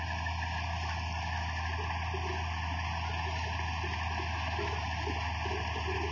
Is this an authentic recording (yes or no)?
yes